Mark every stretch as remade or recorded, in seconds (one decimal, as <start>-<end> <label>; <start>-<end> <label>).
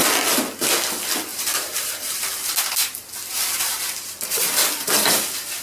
0.0-1.3 recorded; 1.3-4.5 remade; 4.5-5.6 recorded